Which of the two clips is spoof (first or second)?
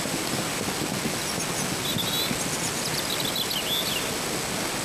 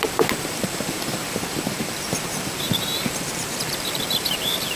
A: second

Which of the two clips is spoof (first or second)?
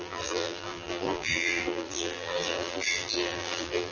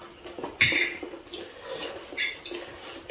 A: first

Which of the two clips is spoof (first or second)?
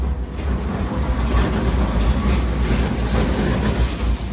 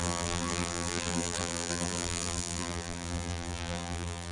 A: second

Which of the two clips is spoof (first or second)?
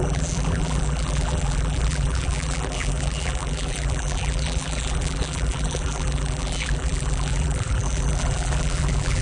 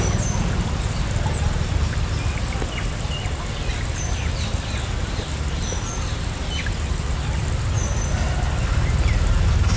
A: first